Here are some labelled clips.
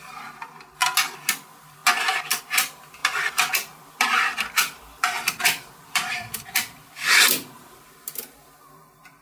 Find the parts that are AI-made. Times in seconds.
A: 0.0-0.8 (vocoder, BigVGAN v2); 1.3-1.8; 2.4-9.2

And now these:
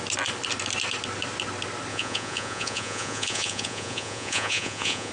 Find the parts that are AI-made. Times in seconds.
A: 1.9-5.1 (vocoder, Vocos)

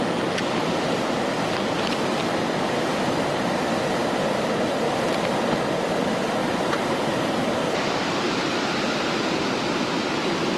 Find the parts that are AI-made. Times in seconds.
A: 6.4-8.8 (vocoder, BigVGAN v2)

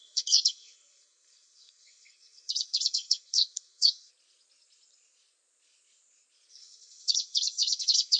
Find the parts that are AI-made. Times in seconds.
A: 0.0-4.1 (codec, SNAC); 6.5-8.2

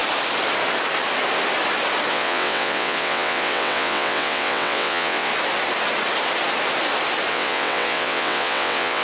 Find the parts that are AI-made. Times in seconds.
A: 2.1-5.3 (vocoder, WaveNeXt); 7.3-9.0